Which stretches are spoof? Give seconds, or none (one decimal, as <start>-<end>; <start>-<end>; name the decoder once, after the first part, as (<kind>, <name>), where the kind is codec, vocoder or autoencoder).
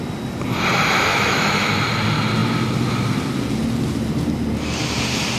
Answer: 1.1-1.7 (autoencoder, DAC-VAE)